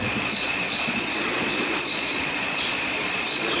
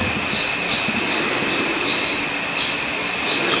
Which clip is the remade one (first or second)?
first